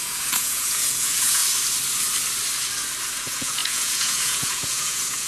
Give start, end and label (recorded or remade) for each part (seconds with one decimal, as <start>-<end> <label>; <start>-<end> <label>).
0.0-1.4 remade; 1.4-3.1 recorded; 3.1-5.3 remade